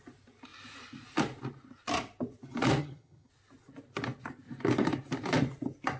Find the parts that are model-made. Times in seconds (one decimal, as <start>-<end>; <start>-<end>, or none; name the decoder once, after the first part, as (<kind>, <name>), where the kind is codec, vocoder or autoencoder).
2.8-3.3 (vocoder, HiFi-GAN)